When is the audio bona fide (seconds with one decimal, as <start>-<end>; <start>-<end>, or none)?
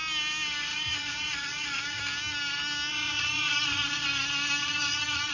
0.0-0.7; 2.0-2.9; 4.1-4.6